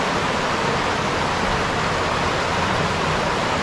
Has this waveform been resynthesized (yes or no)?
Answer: no